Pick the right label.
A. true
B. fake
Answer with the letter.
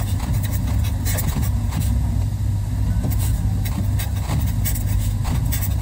A